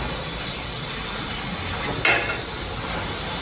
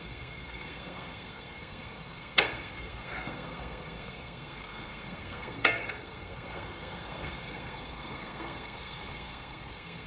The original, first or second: first